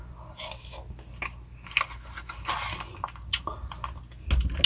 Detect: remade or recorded recorded